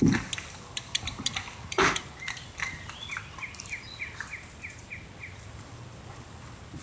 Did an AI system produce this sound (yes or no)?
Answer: no